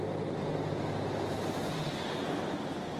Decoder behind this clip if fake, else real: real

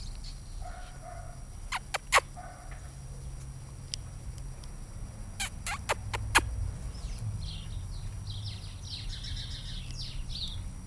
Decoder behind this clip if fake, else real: real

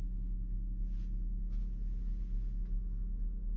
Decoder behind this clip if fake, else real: real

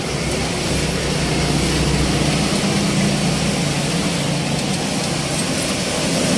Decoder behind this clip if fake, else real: real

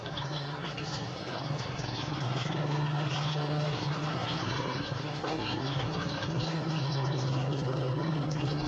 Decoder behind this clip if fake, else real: fake, codec, SNAC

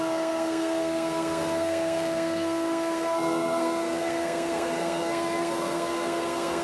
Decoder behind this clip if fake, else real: fake, codec, SNAC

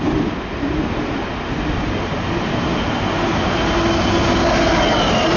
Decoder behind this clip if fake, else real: real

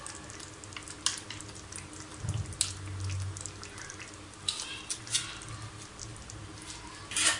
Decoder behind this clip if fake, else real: real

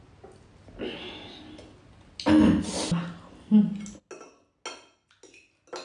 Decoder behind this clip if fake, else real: real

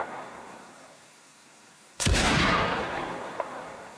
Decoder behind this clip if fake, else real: fake, codec, SNAC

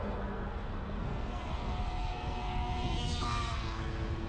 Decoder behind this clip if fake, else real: fake, codec, SNAC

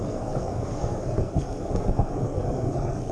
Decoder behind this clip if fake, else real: fake, codec, SNAC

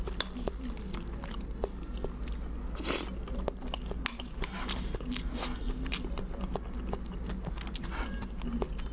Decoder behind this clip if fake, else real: real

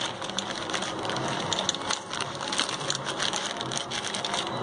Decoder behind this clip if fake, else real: real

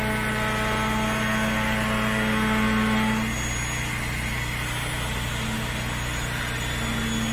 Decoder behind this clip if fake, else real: real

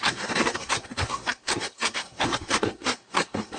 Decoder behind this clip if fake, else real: fake, codec, SNAC